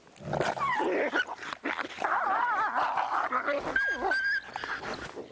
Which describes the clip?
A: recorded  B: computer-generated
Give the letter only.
A